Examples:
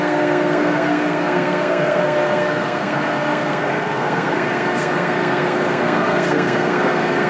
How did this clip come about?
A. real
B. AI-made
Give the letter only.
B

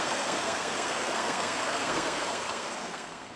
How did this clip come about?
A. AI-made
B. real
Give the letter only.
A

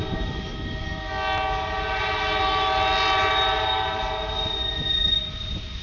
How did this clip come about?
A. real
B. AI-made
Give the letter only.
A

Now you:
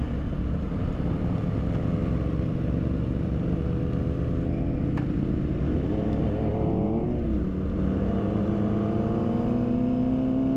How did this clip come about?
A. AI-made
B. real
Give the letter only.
B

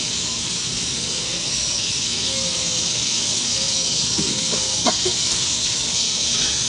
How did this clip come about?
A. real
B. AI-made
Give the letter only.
B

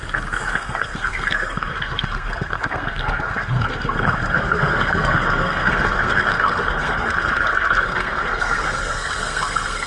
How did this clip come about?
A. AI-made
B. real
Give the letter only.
A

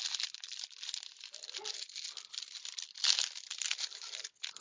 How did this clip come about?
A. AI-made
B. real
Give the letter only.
B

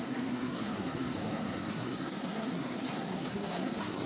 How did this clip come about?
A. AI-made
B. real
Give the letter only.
A